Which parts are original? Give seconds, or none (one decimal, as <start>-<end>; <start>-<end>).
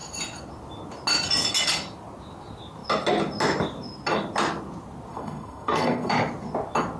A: 0.0-5.1; 6.1-7.0